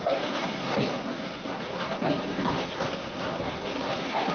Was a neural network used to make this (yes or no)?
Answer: yes